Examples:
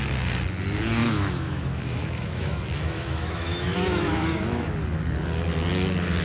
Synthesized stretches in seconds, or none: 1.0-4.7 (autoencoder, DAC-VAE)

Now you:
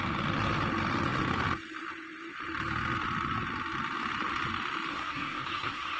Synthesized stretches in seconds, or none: 4.9-6.0 (codec, SNAC)

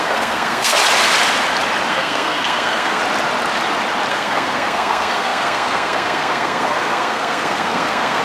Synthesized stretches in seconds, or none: 0.0-0.8 (codec, SNAC); 1.9-3.0; 4.1-8.2

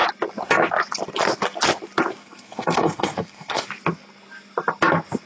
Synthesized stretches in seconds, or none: 2.2-3.6 (codec, SNAC)

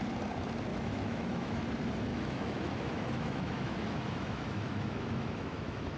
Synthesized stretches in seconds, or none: 0.7-1.6 (autoencoder, DAC-VAE); 2.1-6.0

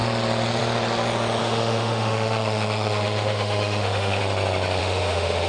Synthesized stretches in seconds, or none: 1.4-4.2 (autoencoder, DAC-VAE); 4.8-5.5

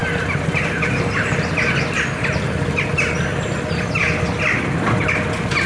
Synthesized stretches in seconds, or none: none